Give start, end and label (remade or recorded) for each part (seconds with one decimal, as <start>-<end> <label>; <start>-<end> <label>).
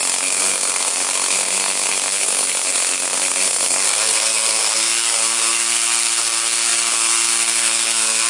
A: 0.0-8.3 remade